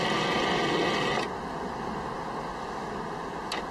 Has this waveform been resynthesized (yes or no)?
no